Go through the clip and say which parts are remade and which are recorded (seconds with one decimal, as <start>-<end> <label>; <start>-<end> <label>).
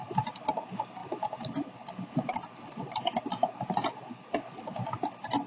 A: 0.0-5.5 recorded